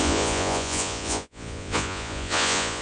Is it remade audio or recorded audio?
remade